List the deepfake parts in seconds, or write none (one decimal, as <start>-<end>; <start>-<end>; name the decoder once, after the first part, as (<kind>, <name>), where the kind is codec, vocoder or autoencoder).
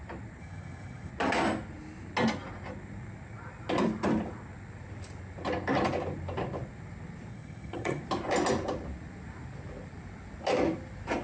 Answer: 0.4-1.1 (vocoder, HiFi-GAN); 7.3-8.0